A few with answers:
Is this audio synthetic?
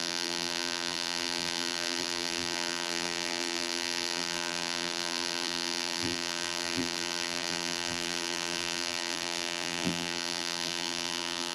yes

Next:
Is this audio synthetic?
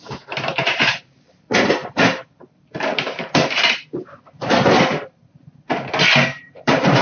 yes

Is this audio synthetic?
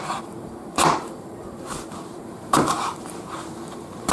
yes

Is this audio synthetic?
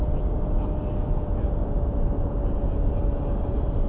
no